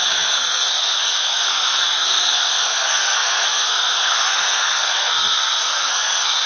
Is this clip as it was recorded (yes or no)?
no